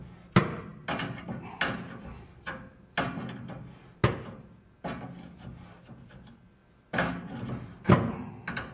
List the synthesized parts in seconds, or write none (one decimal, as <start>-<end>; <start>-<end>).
none